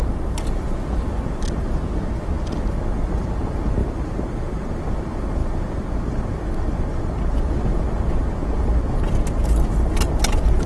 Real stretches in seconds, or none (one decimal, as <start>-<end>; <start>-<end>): 0.0-3.8; 4.8-10.7